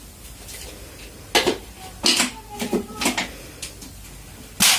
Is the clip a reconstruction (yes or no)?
no